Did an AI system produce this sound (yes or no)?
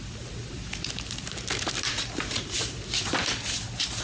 no